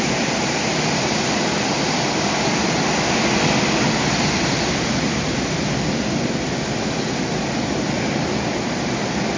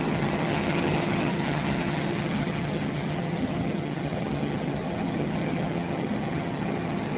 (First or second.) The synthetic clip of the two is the second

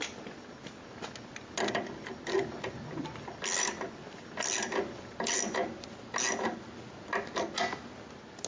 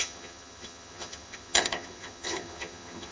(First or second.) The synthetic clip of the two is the second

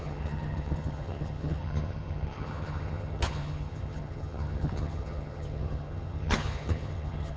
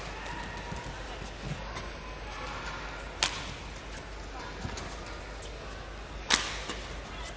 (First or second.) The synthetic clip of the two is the first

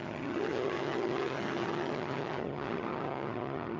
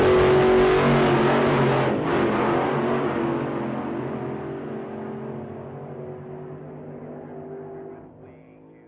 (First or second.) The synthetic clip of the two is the first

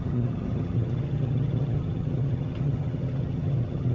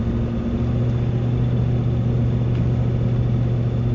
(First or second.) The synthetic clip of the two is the first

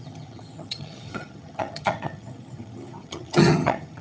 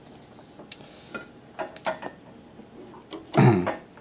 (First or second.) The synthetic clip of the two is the first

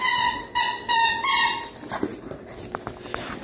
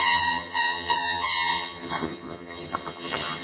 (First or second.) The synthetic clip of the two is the second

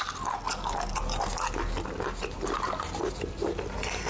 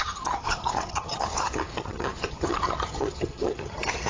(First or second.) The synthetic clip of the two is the second